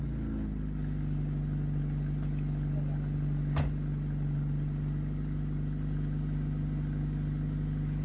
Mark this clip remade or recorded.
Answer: recorded